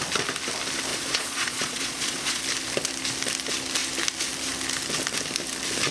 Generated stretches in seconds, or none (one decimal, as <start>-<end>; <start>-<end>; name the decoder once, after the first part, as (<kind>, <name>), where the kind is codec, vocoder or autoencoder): 0.9-2.4 (vocoder, Vocos)